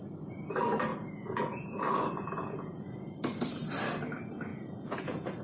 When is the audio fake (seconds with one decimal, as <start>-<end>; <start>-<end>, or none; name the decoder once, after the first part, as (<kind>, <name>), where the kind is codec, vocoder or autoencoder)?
0.9-3.1 (vocoder, Vocos); 4.5-5.4